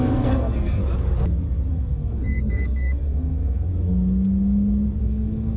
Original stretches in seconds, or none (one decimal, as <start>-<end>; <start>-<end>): 0.8-1.7; 3.7-5.0

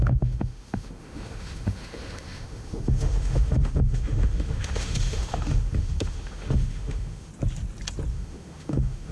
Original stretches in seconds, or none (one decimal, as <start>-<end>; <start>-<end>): 7.3-8.1

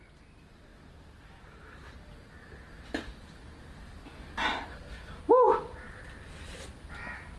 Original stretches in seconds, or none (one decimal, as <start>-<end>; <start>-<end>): 0.0-7.4